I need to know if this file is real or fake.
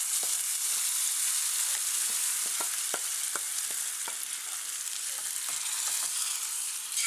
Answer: fake